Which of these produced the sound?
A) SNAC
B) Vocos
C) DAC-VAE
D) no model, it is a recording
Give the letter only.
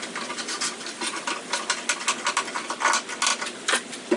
D